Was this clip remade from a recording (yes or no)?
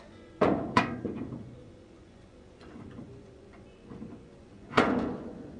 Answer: yes